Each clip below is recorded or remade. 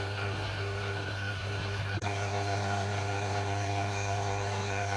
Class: remade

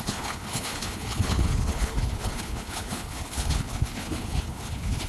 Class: remade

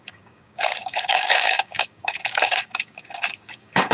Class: remade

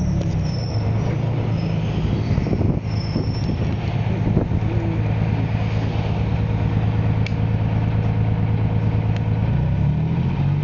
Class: recorded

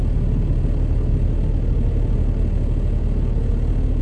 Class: recorded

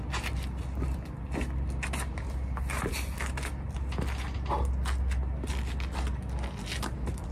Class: recorded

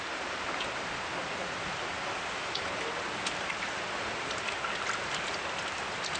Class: recorded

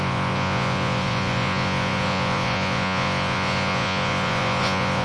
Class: remade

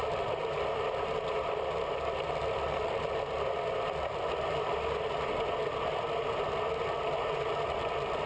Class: recorded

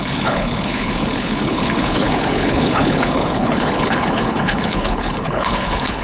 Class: remade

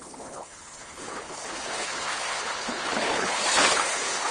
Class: remade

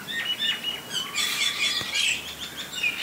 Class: recorded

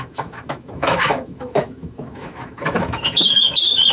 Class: remade